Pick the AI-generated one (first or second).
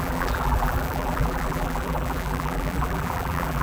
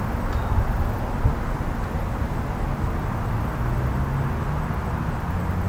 first